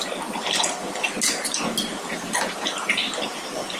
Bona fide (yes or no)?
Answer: yes